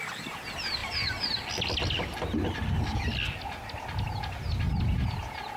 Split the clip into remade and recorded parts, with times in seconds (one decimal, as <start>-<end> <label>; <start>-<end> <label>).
0.0-5.6 recorded